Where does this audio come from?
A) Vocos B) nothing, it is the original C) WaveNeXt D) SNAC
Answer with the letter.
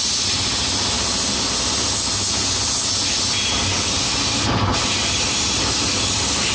B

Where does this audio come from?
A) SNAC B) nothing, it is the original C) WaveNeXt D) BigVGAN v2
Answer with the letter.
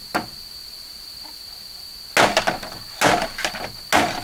B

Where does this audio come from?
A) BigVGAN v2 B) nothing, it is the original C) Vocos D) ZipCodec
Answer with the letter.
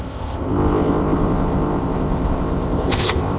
D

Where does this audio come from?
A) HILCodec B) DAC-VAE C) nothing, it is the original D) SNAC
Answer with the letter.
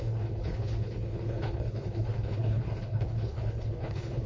A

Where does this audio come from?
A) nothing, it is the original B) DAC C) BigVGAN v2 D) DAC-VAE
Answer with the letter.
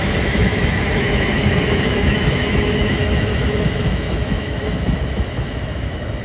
D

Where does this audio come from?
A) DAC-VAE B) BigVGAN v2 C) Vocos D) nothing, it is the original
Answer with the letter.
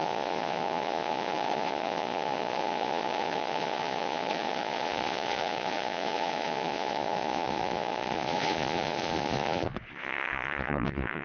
C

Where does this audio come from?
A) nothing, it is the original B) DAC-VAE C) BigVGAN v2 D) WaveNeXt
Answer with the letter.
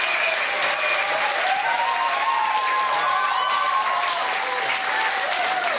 A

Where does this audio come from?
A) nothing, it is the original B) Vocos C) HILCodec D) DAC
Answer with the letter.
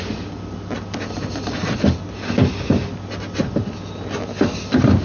A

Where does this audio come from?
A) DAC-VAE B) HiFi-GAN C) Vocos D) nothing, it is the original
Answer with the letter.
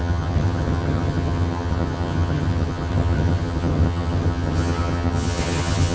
B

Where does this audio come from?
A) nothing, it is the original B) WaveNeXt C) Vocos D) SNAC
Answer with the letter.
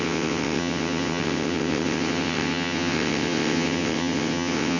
B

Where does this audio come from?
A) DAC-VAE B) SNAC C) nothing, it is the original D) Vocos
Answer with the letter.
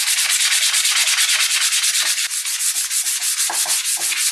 C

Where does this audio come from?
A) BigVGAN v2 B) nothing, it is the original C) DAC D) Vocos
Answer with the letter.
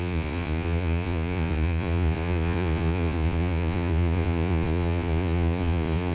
D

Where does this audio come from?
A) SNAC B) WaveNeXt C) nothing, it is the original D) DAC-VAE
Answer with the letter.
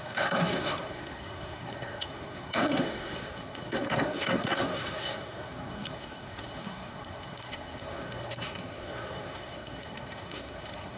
A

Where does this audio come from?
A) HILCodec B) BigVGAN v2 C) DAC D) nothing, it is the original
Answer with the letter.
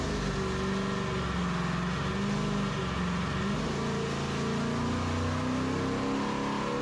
D